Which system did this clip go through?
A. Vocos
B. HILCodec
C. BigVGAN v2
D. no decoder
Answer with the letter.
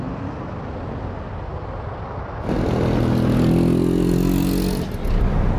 D